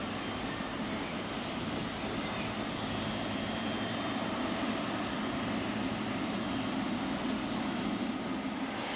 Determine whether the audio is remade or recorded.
recorded